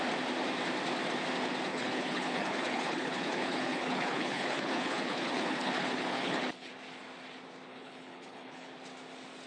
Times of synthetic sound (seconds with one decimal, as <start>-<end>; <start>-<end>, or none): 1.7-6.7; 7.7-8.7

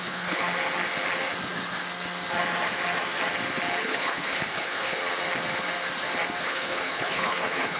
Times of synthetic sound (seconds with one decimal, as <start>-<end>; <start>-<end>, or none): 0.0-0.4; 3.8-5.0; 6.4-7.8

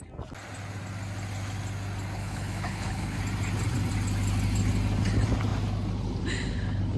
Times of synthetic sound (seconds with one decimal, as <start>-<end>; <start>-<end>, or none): 2.2-3.2

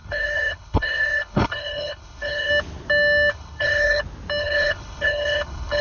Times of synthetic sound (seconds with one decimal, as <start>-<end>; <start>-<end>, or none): 0.0-2.5; 3.3-4.0; 4.4-5.8

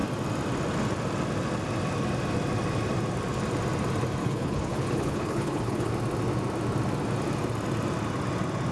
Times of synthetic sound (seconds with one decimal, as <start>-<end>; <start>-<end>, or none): 4.2-5.9